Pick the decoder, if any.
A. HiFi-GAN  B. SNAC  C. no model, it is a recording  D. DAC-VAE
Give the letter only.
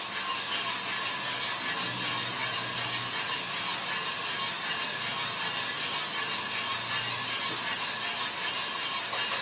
C